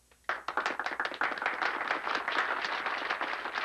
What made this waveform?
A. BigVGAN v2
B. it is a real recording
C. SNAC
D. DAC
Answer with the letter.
B